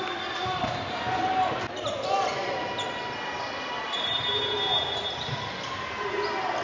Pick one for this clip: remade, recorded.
recorded